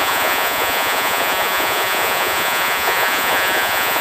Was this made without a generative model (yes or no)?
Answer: no